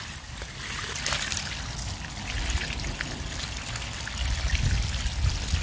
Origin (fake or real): real